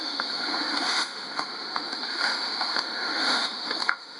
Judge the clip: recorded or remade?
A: remade